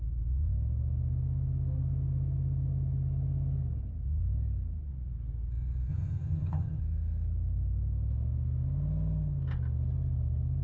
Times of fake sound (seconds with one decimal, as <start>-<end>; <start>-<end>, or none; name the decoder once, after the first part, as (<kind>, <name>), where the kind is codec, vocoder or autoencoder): 5.9-6.8 (vocoder, HiFi-GAN)